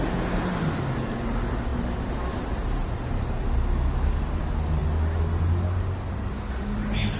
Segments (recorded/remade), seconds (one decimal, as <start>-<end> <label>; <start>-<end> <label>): 0.0-7.2 recorded